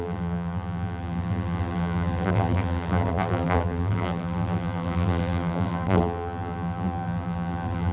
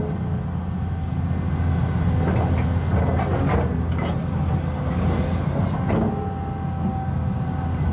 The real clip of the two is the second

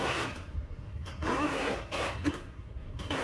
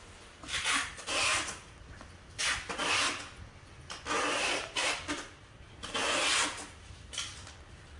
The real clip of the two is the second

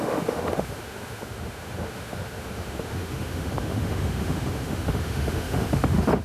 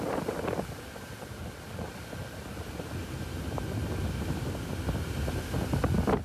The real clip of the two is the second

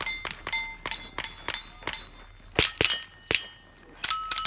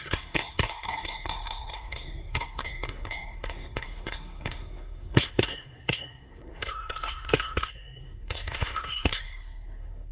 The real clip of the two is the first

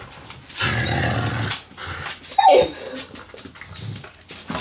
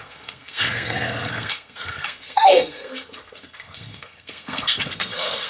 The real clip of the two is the first